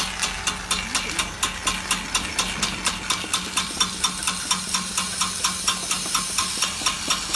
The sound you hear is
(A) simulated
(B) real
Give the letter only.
B